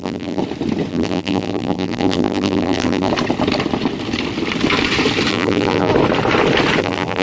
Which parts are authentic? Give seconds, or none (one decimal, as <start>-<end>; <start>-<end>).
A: 0.4-0.9; 3.1-5.3; 5.9-6.8